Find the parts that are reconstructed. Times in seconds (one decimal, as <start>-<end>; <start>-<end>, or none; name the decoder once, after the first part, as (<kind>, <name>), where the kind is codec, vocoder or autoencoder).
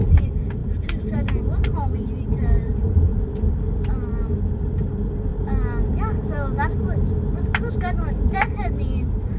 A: 0.0-3.1 (vocoder, BigVGAN v2); 4.5-5.3; 7.7-9.4